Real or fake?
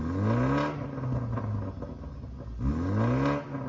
real